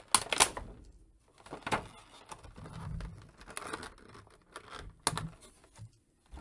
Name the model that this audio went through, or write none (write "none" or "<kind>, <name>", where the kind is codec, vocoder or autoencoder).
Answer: none